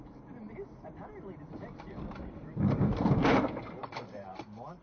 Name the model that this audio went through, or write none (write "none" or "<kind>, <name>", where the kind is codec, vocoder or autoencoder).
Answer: vocoder, BigVGAN v2